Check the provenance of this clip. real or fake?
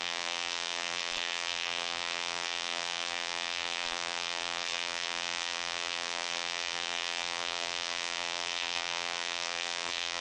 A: fake